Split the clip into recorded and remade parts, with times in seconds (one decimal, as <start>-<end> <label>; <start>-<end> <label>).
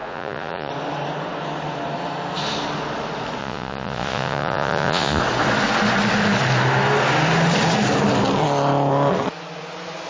0.0-0.7 remade; 0.7-3.4 recorded; 3.4-5.2 remade; 5.2-10.1 recorded